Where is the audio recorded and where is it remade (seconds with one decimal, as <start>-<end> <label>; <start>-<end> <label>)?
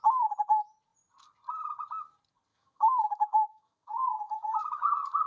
0.0-2.5 recorded; 2.5-4.6 remade; 4.6-5.3 recorded